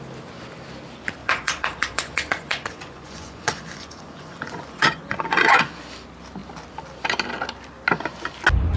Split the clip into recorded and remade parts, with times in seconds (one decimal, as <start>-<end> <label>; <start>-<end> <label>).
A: 0.0-1.2 recorded; 1.2-5.6 remade; 5.6-8.8 recorded